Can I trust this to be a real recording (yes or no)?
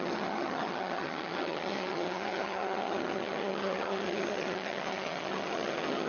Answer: no